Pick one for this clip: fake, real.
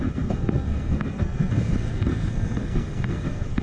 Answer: fake